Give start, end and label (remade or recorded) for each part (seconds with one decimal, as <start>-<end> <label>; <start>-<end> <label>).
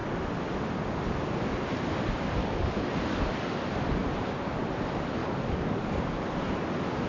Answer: 0.0-2.4 recorded; 2.4-2.9 remade; 2.9-5.2 recorded; 5.2-6.0 remade; 6.0-7.1 recorded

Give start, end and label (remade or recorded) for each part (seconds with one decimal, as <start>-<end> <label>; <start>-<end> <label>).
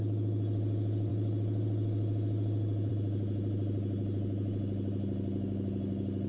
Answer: 0.0-6.3 recorded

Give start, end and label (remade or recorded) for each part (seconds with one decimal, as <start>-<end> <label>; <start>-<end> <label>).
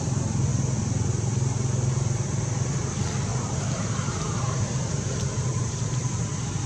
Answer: 0.0-3.3 recorded; 3.3-6.2 remade; 6.2-6.7 recorded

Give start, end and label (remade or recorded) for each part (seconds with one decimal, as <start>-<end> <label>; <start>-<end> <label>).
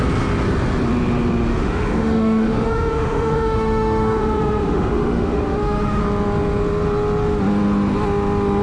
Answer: 0.0-1.5 recorded; 1.5-6.0 remade; 6.0-8.6 recorded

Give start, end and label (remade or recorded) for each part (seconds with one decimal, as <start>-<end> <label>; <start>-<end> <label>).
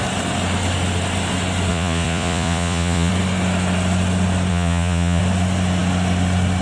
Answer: 0.0-1.7 recorded; 1.7-3.1 remade; 3.1-4.5 recorded; 4.5-5.2 remade; 5.2-6.6 recorded